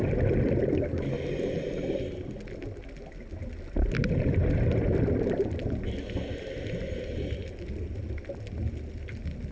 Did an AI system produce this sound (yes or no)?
no